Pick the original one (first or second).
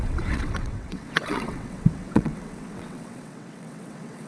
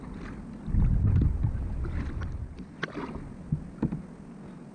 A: second